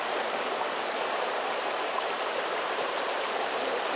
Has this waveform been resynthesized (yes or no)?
yes